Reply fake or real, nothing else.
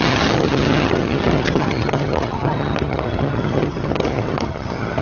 fake